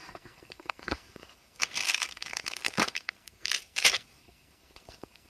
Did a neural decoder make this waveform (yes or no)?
yes